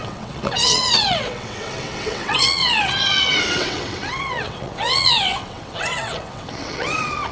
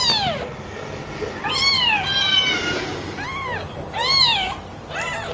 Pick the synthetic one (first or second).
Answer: first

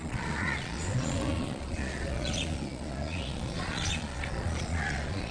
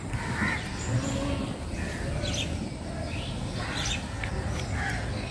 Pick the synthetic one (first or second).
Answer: first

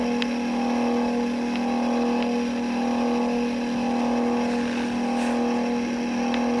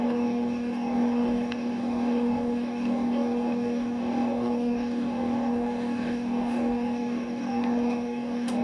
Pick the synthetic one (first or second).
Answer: second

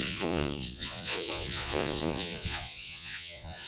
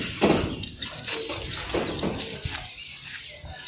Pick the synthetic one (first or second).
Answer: first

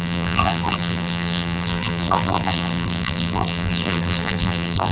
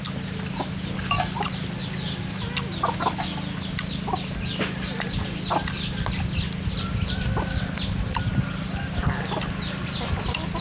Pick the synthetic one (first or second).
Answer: first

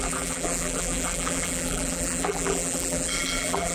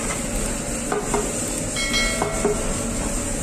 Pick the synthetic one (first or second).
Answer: first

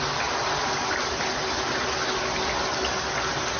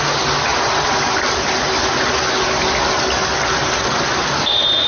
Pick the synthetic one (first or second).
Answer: second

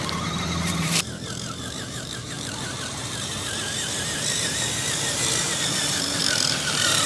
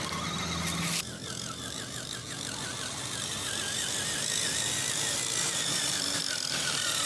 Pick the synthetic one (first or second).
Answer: first